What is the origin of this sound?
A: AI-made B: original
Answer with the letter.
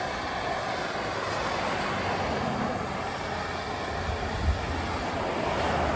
B